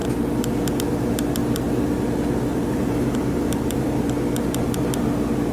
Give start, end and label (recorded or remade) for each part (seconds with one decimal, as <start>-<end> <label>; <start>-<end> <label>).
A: 0.0-1.4 recorded; 1.4-2.0 remade; 2.0-2.5 recorded; 2.5-4.1 remade; 4.1-5.5 recorded